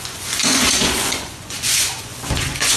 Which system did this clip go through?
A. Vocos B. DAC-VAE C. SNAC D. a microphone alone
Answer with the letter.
A